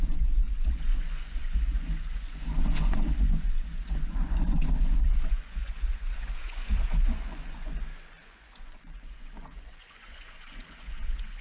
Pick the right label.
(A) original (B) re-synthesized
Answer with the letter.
B